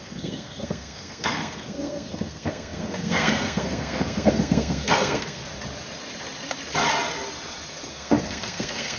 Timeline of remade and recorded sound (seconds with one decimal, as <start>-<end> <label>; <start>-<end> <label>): 0.0-5.4 remade; 5.4-7.9 recorded; 7.9-9.0 remade

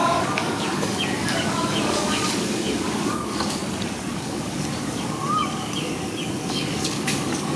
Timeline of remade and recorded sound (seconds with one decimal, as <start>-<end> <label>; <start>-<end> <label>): 0.0-3.6 remade; 3.6-4.1 recorded; 4.1-7.6 remade

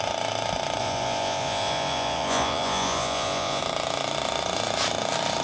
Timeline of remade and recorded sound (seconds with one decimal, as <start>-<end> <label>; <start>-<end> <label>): 0.0-0.8 recorded; 0.8-3.6 remade; 3.6-5.4 recorded

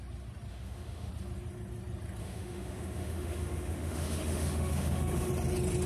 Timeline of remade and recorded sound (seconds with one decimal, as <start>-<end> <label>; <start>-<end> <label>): 0.0-0.5 recorded; 0.5-1.1 remade; 1.1-2.2 recorded; 2.2-5.3 remade; 5.3-5.9 recorded

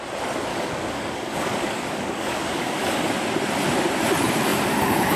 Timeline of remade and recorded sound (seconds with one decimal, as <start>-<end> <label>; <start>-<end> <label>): 0.0-0.5 recorded; 0.5-3.1 remade; 3.1-5.2 recorded

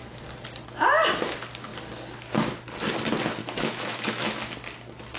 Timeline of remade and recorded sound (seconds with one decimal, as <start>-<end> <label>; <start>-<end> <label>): 0.0-3.4 recorded; 3.4-4.4 remade; 4.4-5.2 recorded